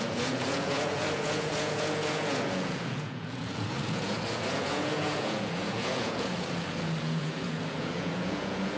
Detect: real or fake fake